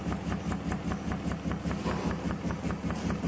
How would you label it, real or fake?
real